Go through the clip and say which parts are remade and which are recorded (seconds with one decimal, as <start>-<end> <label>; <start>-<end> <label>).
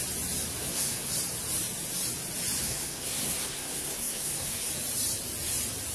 0.0-0.6 recorded; 0.6-1.1 remade; 1.1-2.6 recorded; 2.6-4.7 remade; 4.7-5.9 recorded